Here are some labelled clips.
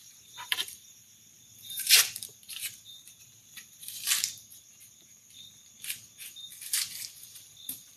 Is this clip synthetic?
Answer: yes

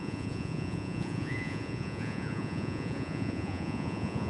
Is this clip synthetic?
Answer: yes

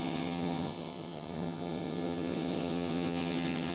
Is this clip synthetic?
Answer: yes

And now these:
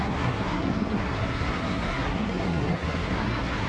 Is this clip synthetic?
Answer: yes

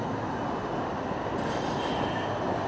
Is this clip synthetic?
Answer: no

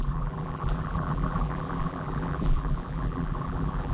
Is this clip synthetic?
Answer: yes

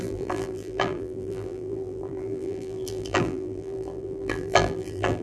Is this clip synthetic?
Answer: yes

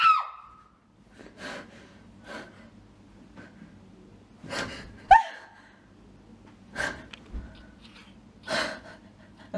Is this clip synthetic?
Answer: no